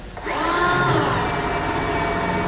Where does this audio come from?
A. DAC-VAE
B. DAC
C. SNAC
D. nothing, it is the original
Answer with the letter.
D